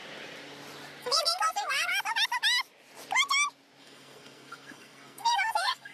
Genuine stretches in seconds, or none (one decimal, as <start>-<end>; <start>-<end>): 0.0-1.0; 1.9-3.8